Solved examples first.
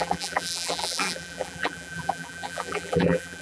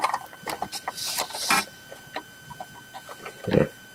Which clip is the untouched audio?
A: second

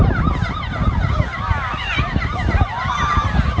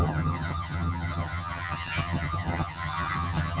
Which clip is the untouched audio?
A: first